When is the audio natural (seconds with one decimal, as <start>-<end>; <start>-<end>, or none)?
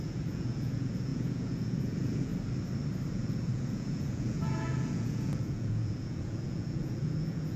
2.3-3.1